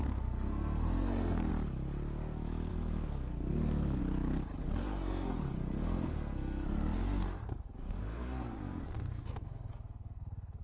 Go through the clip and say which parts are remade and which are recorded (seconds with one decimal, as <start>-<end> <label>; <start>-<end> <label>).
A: 0.0-1.5 remade; 1.5-2.7 recorded; 2.7-4.0 remade; 4.0-4.6 recorded; 4.6-10.6 remade